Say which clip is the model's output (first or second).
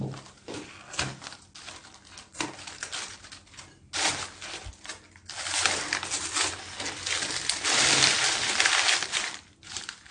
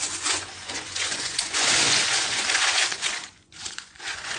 second